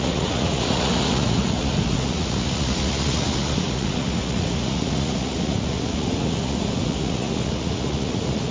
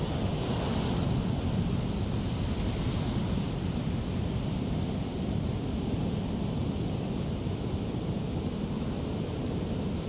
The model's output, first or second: first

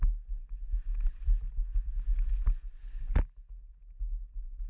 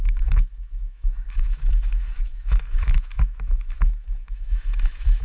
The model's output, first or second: second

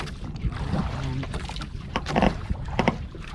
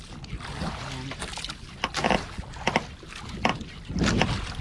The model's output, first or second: first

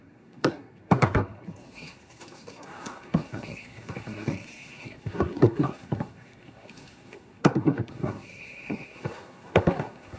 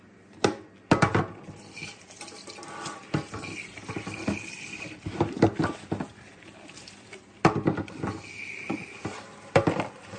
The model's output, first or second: first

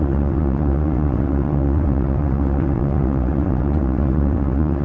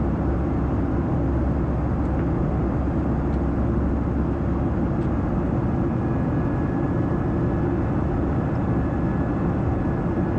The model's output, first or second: first